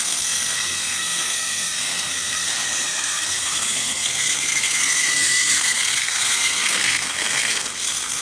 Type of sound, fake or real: fake